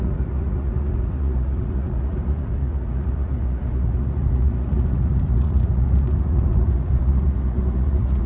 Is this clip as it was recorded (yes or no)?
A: no